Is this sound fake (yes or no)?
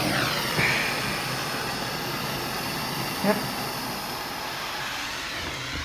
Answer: no